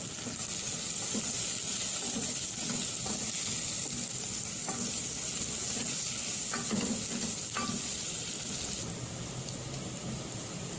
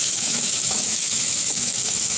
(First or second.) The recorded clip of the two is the first